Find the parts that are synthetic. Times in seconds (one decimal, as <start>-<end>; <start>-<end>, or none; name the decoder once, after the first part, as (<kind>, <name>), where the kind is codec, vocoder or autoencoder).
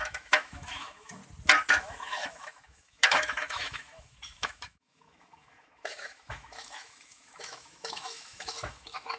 0.0-1.2 (autoencoder, DAC-VAE); 1.7-9.2